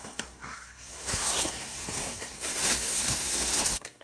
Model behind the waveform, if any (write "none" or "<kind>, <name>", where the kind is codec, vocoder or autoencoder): codec, SNAC